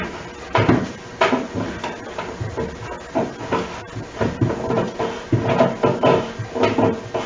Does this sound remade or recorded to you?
recorded